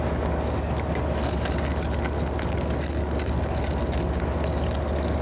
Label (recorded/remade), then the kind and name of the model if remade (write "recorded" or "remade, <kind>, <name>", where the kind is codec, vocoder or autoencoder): recorded